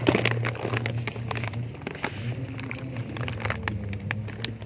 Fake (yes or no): no